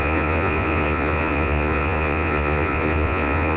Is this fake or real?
fake